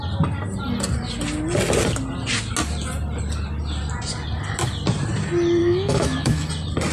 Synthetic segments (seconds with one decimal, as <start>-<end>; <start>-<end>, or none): 5.6-6.5